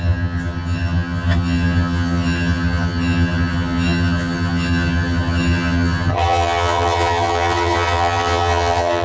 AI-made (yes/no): yes